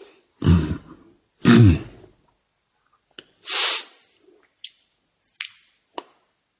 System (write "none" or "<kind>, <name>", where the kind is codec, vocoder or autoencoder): none